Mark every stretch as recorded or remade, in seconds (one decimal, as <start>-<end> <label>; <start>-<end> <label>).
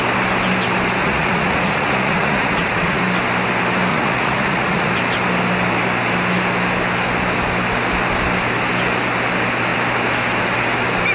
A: 0.0-1.0 recorded; 1.0-3.0 remade; 3.0-3.9 recorded; 3.9-4.9 remade; 4.9-11.1 recorded